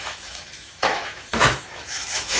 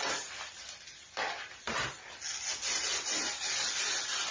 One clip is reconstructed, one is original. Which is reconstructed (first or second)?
first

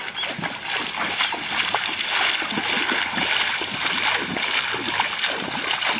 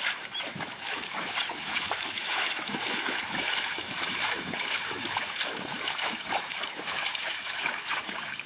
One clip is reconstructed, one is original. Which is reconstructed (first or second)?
second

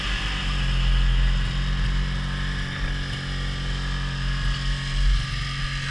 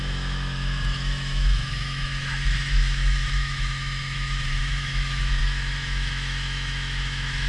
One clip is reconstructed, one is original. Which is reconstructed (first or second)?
second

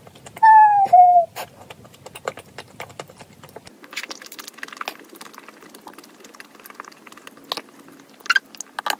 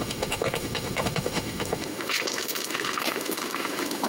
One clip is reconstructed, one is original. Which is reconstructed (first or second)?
second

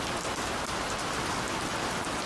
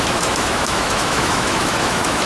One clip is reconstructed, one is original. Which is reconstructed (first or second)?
second